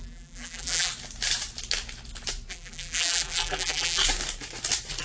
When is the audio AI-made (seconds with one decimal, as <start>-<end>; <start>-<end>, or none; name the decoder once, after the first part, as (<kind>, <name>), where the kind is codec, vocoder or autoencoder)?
0.0-0.9 (vocoder, BigVGAN v2); 2.5-4.0